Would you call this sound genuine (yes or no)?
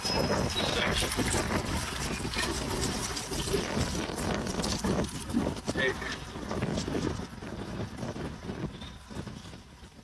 yes